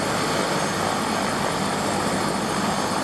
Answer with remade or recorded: recorded